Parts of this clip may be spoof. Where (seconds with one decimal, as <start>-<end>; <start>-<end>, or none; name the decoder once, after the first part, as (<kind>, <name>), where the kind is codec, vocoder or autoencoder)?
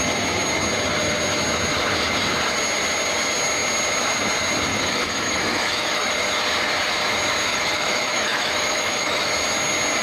4.7-6.1 (autoencoder, DAC-VAE); 7.5-9.2